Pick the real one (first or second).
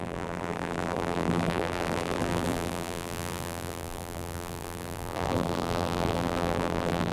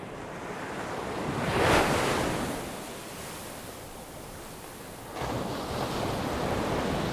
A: second